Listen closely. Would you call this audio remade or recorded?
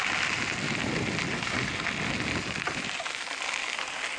recorded